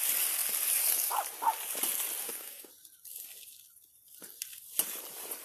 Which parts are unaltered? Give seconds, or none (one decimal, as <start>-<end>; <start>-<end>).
0.0-2.2; 2.7-5.4